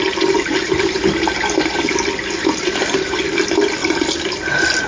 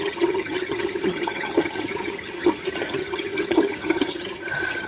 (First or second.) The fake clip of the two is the second